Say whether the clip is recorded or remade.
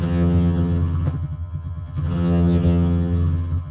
remade